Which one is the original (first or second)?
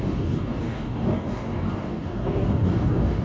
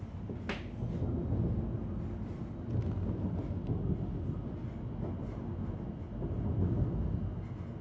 second